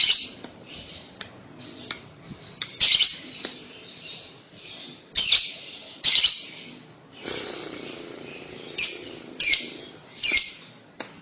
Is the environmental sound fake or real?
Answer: fake